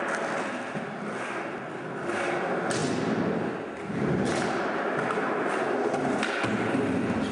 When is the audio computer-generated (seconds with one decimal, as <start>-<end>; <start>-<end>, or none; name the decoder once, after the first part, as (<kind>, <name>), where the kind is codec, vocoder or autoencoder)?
none